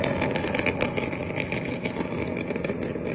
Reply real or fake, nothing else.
real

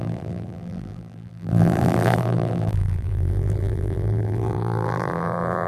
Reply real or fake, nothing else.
fake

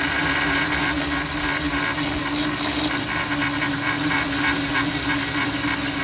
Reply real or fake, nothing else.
real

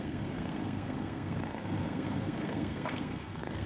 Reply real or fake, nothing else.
fake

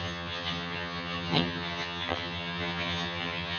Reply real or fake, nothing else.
fake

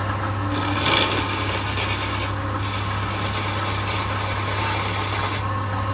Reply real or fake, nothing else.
real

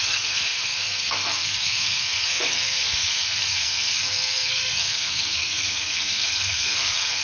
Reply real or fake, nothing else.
fake